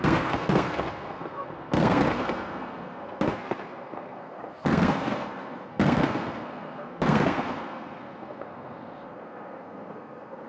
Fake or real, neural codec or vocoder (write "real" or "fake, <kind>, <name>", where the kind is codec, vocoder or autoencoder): fake, codec, SNAC